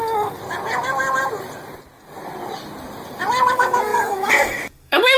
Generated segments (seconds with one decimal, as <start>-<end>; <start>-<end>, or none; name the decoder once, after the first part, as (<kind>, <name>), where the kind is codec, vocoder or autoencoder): 0.0-0.4 (codec, DAC); 3.5-5.2

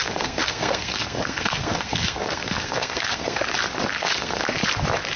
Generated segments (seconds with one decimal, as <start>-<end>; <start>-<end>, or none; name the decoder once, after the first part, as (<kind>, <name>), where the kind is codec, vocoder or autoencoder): 0.0-3.4 (codec, SNAC); 4.0-4.4

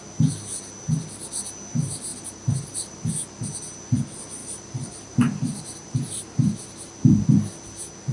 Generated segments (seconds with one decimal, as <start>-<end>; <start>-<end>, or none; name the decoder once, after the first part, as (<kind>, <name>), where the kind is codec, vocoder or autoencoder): 2.1-3.1 (vocoder, BigVGAN v2); 4.4-6.9